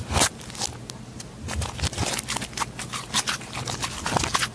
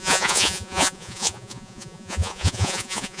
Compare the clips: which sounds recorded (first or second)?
first